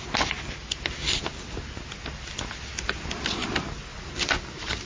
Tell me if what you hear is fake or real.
real